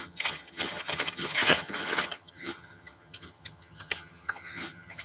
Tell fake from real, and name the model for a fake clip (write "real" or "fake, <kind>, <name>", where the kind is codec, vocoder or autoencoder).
fake, vocoder, HiFi-GAN